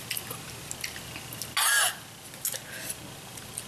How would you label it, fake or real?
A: real